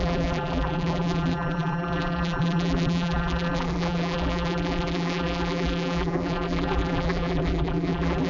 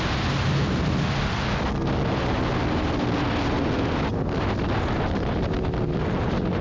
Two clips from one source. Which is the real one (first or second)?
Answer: second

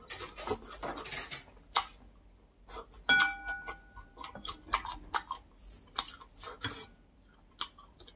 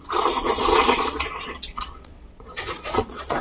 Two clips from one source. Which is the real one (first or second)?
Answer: first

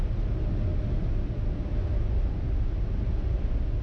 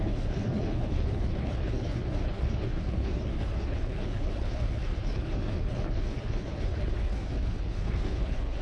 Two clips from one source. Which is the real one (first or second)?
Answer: first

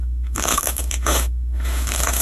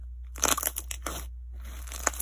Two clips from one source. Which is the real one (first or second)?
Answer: second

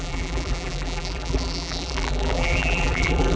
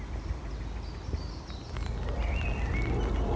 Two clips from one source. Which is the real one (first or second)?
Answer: second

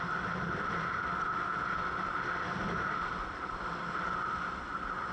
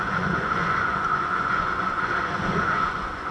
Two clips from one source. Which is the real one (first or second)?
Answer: first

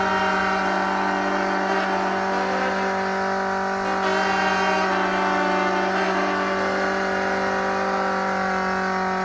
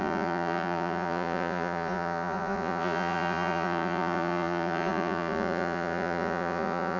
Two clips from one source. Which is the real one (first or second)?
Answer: first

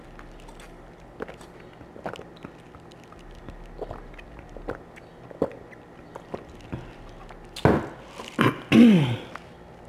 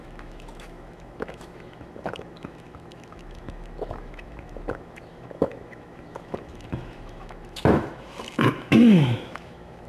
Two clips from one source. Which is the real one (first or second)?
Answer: first